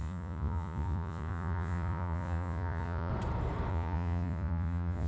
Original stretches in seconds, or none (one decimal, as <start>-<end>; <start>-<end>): 3.1-3.7